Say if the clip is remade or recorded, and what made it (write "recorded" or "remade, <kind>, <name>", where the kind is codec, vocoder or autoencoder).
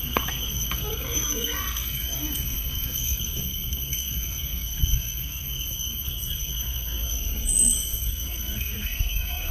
remade, codec, SNAC